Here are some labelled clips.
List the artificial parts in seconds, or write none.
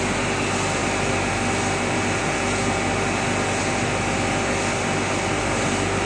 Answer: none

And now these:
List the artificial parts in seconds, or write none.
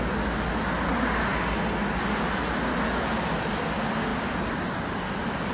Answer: none